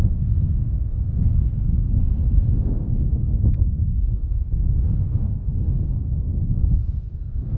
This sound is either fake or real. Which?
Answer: fake